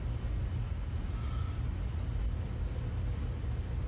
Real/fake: real